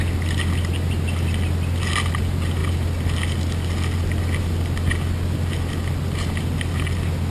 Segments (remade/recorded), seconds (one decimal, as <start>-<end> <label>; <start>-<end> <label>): 0.0-7.3 recorded